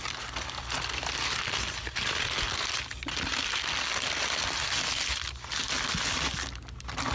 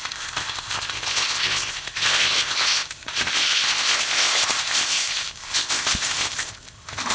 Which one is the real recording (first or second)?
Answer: first